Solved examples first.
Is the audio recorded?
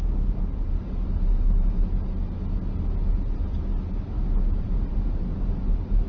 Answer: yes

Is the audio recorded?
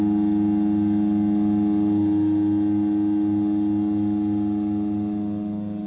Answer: yes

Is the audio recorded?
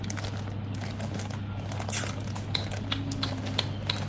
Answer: yes